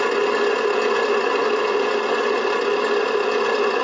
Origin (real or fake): real